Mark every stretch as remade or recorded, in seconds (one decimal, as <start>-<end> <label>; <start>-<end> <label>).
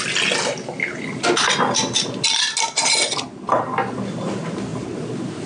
0.0-5.5 recorded